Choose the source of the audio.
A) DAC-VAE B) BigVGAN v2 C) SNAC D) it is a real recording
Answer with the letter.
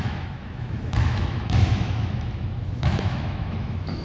A